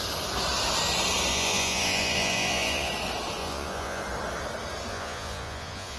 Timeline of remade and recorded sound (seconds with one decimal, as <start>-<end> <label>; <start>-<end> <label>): 0.0-1.3 recorded; 1.3-2.9 remade; 2.9-3.4 recorded; 3.4-4.0 remade; 4.0-4.9 recorded; 4.9-6.0 remade